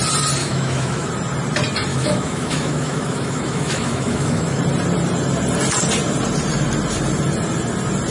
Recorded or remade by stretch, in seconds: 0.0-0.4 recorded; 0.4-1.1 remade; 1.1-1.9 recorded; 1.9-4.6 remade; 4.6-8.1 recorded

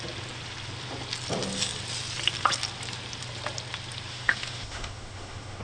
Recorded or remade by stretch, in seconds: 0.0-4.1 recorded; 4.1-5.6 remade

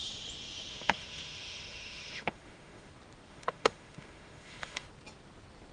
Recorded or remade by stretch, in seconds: 0.0-0.7 recorded; 0.7-2.9 remade; 2.9-3.3 recorded; 3.3-4.9 remade; 4.9-5.7 recorded

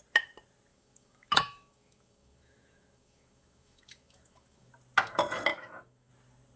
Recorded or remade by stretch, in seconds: 0.0-0.7 recorded; 0.7-4.7 remade; 4.7-5.5 recorded; 5.5-6.1 remade; 6.1-6.6 recorded

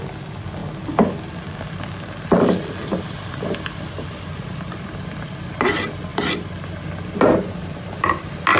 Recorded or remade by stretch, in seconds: 0.0-8.6 recorded